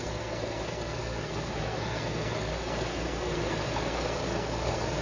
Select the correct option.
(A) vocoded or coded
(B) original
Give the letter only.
A